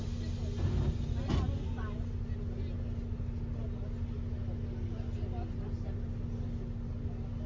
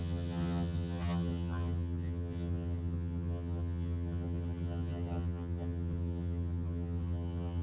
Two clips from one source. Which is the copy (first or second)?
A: second